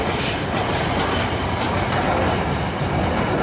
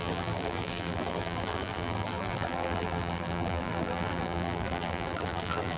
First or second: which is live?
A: first